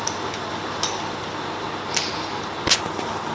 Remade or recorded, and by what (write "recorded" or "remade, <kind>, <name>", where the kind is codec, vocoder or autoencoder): recorded